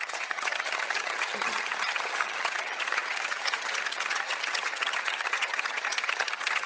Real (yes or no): no